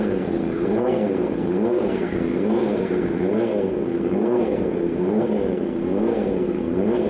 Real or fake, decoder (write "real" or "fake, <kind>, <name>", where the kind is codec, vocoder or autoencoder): fake, codec, SNAC